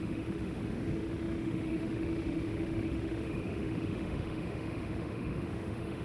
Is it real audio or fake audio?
fake